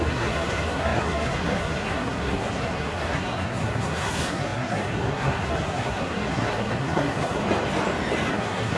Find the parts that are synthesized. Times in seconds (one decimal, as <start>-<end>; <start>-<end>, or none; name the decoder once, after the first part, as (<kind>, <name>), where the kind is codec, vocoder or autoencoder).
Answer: 0.0-7.4 (codec, SNAC); 8.3-8.8